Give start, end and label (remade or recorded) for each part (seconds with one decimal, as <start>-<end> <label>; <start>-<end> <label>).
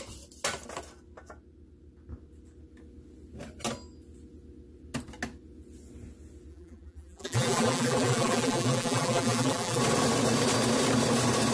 0.0-6.5 recorded; 6.5-9.8 remade; 9.8-11.5 recorded